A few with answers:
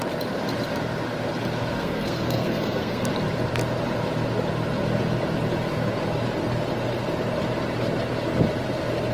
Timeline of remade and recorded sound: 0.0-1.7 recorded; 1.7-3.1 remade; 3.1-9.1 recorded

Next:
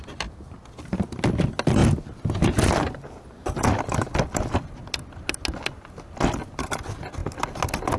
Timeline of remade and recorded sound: 0.0-8.0 recorded

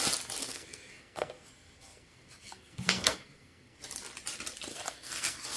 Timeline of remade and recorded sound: 0.0-0.4 recorded; 0.4-3.8 remade; 3.8-4.7 recorded; 4.7-5.6 remade